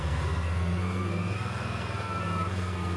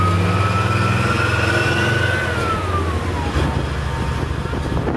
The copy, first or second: first